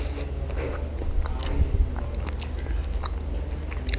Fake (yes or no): no